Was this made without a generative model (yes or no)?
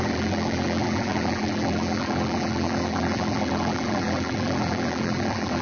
no